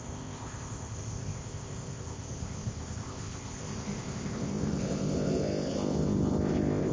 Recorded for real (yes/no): no